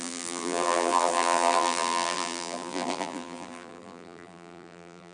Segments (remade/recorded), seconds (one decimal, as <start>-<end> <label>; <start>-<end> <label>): 0.0-5.1 remade